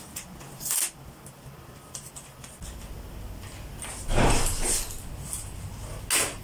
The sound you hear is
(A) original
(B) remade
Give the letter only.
A